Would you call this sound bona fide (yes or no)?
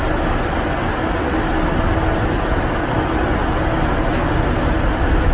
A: yes